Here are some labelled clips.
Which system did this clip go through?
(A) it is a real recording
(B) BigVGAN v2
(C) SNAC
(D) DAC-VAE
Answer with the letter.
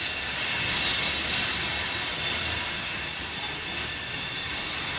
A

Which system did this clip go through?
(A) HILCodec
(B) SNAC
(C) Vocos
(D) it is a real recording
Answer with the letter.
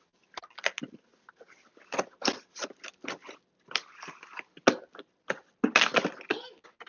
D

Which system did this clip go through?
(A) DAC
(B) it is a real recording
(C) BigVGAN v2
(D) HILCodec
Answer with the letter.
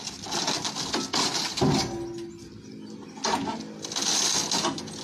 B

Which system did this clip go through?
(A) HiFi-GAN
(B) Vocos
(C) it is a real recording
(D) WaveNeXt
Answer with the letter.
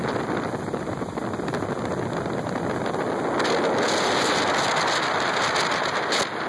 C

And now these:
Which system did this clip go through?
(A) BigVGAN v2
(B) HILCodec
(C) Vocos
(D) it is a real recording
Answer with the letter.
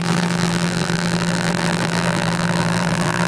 A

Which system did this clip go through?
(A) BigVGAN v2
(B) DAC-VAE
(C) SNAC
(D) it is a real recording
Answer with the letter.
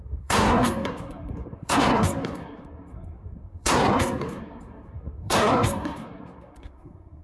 C